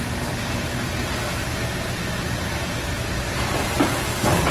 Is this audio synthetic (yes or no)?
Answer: no